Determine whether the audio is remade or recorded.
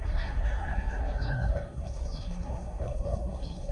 remade